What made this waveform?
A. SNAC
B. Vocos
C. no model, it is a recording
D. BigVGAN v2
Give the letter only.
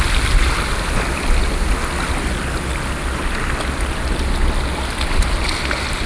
C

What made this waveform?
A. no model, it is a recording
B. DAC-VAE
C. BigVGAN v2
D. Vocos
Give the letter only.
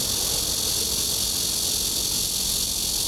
A